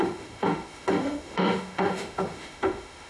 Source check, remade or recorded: remade